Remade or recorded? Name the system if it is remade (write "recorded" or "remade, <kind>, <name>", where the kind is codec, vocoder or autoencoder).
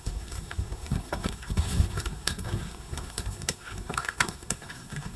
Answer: remade, codec, SNAC